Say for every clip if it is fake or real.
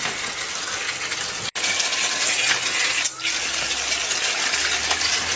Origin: real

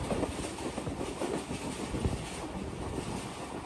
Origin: real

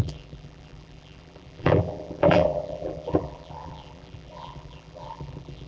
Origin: fake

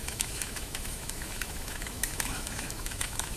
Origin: fake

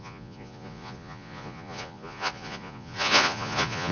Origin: fake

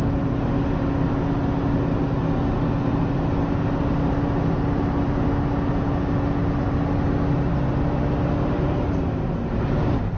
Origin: real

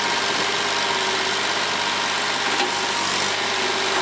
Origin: real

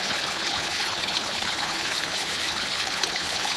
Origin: fake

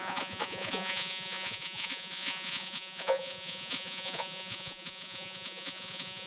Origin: fake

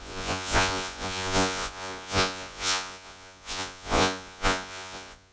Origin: fake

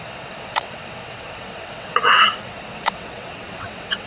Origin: fake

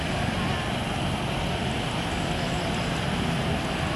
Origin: real